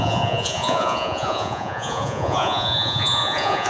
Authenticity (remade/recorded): remade